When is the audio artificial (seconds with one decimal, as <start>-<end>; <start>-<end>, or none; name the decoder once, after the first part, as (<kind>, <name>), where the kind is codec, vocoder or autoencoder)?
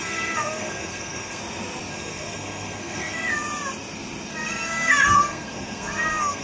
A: 0.0-1.4 (codec, SNAC); 1.9-3.3; 4.3-6.4